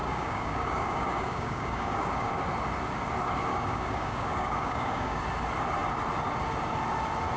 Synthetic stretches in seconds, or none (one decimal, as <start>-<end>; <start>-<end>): 0.0-2.3; 3.5-5.2